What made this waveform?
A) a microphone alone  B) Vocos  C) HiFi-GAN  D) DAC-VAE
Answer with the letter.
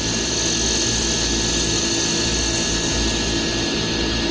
A